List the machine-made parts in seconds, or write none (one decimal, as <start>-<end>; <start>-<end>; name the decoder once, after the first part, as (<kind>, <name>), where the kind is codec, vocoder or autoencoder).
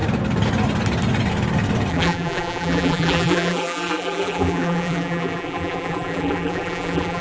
1.9-7.2 (vocoder, BigVGAN v2)